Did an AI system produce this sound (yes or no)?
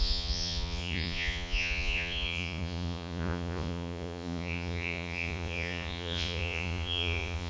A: yes